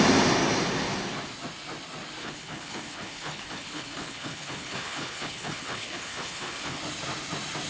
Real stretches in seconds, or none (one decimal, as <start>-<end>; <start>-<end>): 0.0-2.2; 6.8-7.7